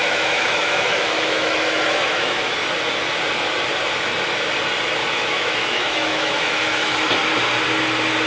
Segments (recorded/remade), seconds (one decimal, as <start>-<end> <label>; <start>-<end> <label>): 0.0-2.5 remade; 2.5-5.0 recorded; 5.0-7.1 remade; 7.1-8.3 recorded